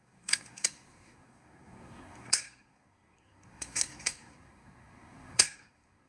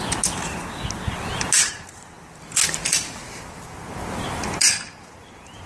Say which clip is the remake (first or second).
first